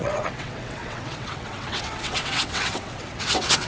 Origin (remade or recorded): remade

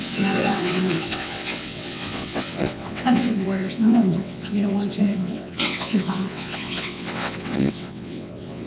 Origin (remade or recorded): remade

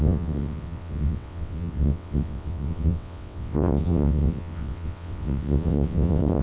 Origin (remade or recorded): remade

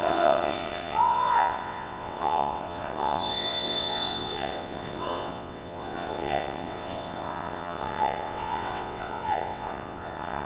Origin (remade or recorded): remade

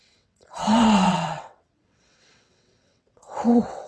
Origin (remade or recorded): remade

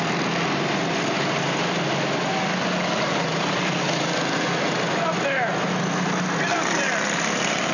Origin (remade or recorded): recorded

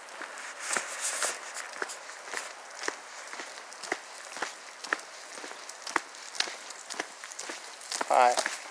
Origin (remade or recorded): recorded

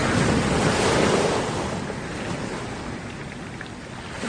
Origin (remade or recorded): recorded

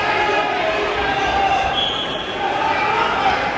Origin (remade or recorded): recorded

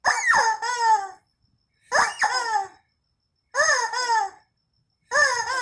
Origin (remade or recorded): recorded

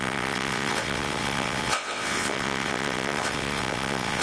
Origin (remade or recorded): remade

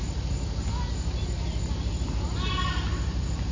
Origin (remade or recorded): recorded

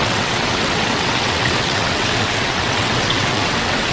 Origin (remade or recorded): remade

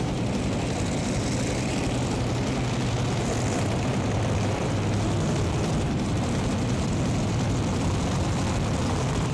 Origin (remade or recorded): recorded